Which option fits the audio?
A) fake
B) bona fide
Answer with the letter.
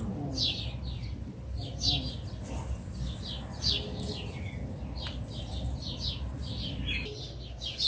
B